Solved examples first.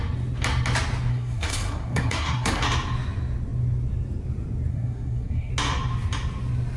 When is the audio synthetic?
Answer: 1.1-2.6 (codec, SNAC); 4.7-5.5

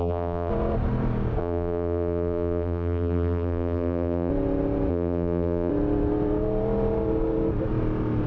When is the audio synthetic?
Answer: 0.0-0.5 (vocoder, BigVGAN v2); 1.4-4.3; 4.9-5.7

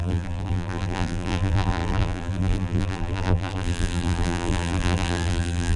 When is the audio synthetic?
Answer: 0.0-5.8 (vocoder, BigVGAN v2)